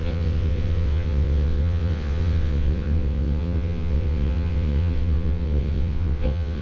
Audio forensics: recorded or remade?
remade